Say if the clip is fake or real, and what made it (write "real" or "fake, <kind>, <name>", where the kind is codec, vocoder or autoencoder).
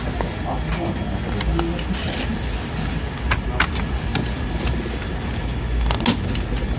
real